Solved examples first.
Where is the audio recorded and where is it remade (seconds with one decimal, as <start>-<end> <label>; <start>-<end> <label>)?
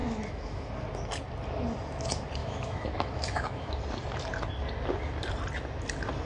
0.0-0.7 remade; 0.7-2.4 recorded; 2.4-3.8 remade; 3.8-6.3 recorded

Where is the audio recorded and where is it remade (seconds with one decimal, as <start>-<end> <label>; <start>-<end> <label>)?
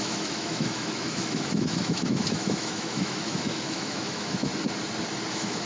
0.0-4.5 remade; 4.5-5.3 recorded; 5.3-5.7 remade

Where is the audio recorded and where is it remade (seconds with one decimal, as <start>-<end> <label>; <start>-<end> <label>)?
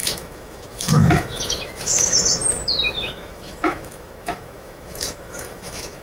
0.0-2.4 remade; 2.4-2.9 recorded; 2.9-6.0 remade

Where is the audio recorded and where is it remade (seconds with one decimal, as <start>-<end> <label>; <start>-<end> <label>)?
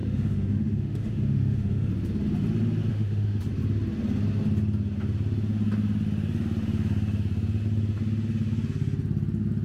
0.0-1.9 remade; 1.9-2.9 recorded; 2.9-3.4 remade; 3.4-9.6 recorded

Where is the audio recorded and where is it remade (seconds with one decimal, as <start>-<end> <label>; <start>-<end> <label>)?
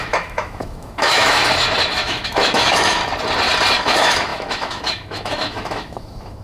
0.0-1.4 remade; 1.4-2.0 recorded; 2.0-3.0 remade; 3.0-3.8 recorded; 3.8-6.4 remade